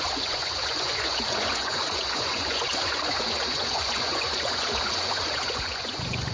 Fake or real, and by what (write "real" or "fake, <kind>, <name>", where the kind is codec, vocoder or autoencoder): fake, vocoder, Vocos